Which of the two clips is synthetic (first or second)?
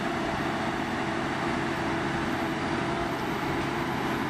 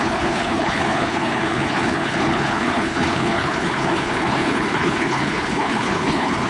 second